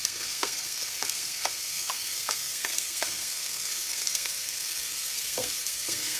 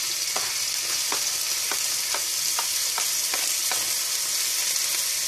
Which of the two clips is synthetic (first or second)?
first